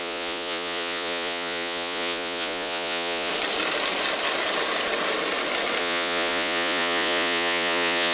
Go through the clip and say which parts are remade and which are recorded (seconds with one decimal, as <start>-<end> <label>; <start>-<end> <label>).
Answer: 0.0-3.3 remade; 3.3-5.8 recorded; 5.8-8.1 remade